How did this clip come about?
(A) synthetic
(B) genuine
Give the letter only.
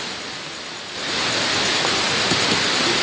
B